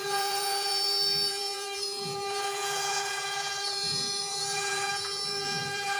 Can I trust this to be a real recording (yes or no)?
no